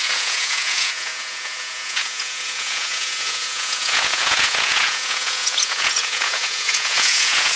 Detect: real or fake fake